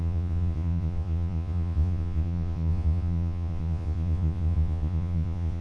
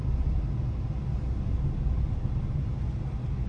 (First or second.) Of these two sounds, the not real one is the first